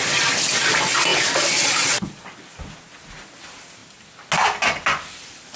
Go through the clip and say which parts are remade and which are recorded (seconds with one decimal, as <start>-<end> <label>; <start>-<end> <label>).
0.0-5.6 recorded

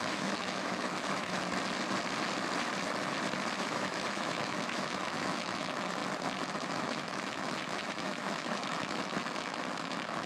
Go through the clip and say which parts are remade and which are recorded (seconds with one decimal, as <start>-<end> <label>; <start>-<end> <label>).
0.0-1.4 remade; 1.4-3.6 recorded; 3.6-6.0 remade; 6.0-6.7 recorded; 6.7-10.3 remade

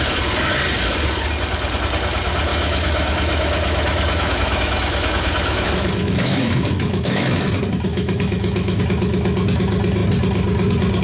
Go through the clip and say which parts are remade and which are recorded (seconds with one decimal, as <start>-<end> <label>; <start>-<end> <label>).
0.0-2.5 recorded; 2.5-7.4 remade; 7.4-7.9 recorded; 7.9-8.8 remade; 8.8-11.0 recorded

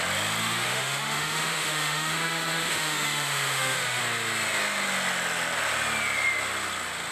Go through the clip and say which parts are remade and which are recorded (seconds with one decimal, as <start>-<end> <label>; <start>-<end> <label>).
0.0-0.4 recorded; 0.4-4.0 remade; 4.0-7.1 recorded

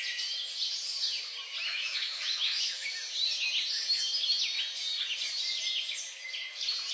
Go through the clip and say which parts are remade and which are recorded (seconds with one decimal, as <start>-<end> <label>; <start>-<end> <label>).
0.0-1.7 recorded; 1.7-2.6 remade; 2.6-6.9 recorded